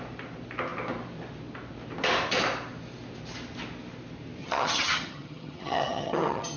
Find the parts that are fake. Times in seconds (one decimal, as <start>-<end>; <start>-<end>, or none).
4.4-6.6